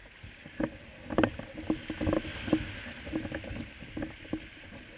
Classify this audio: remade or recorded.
recorded